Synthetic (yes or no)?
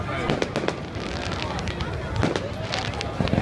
no